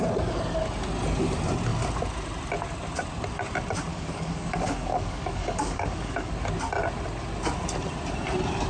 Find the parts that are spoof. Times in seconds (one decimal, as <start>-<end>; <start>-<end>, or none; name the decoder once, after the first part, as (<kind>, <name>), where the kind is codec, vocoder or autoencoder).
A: 3.9-6.3 (codec, DAC)